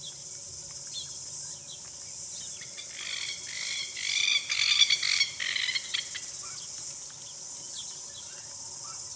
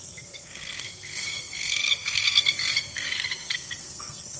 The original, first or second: first